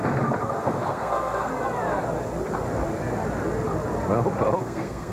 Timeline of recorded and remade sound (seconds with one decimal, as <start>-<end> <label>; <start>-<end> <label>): 0.0-0.6 recorded; 0.6-1.5 remade; 1.5-4.6 recorded; 4.6-5.1 remade